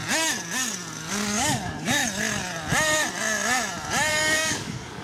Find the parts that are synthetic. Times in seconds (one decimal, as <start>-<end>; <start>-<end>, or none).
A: 1.1-2.0; 4.1-5.0